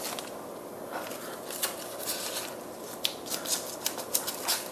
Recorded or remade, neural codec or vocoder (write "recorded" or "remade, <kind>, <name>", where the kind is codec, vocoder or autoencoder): recorded